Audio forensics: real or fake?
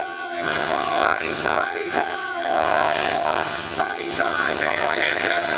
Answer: fake